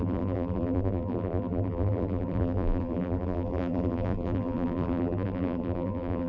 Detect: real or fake fake